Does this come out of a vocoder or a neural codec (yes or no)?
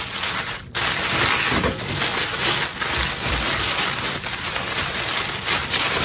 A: no